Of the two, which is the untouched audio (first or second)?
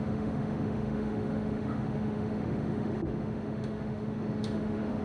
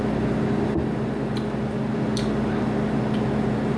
second